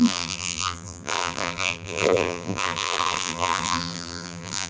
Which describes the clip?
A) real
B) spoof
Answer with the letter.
B